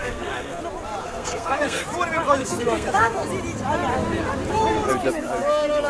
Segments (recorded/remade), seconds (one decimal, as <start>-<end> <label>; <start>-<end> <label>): 0.0-0.6 remade; 0.6-1.0 recorded; 1.0-1.8 remade; 1.8-2.4 recorded; 2.4-3.3 remade; 3.3-5.9 recorded